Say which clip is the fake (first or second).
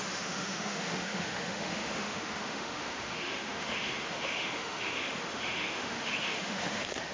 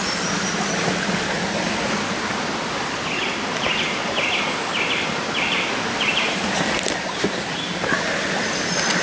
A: first